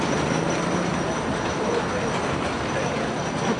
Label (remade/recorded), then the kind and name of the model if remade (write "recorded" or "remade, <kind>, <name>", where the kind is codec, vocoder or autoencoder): recorded